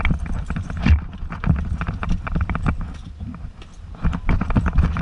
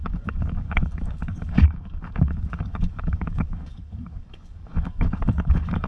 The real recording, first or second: first